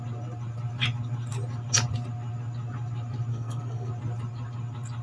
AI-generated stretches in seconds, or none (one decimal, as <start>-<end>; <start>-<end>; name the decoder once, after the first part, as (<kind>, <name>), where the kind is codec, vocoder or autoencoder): 3.3-3.9 (codec, SNAC)